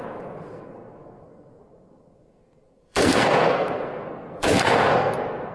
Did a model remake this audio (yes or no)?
yes